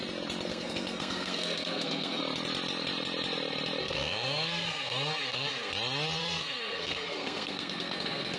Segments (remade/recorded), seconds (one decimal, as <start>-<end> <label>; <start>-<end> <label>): 0.0-0.5 recorded; 0.5-2.2 remade; 2.2-3.8 recorded; 3.8-5.7 remade; 5.7-6.2 recorded; 6.2-8.4 remade